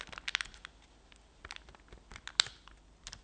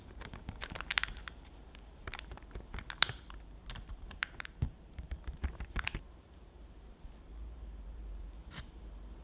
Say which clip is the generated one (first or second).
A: second